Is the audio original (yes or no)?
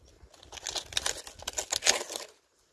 yes